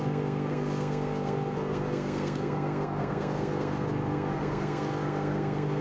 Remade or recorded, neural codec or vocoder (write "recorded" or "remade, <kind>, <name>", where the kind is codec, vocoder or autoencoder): remade, codec, SNAC